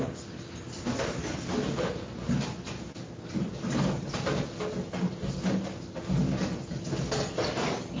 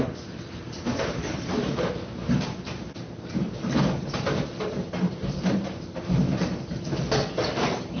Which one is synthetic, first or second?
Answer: second